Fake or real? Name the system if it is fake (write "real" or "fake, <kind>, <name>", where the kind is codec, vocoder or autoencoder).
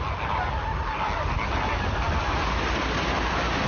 real